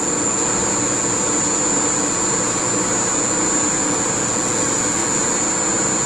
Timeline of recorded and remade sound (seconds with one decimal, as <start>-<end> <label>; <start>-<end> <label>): 0.0-6.1 recorded